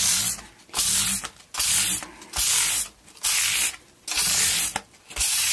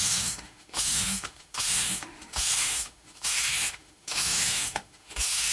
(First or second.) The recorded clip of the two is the first